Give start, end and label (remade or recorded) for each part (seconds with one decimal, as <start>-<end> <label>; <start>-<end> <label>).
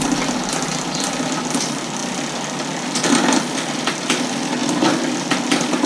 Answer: 0.0-5.9 recorded